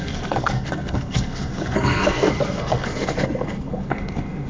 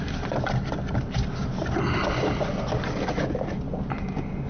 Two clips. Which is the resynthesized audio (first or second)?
first